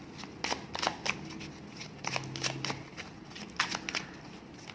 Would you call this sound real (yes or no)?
yes